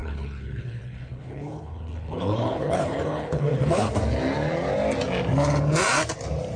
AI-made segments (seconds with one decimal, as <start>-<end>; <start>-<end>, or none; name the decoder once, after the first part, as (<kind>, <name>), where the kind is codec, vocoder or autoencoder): 0.0-3.9 (codec, HILCodec)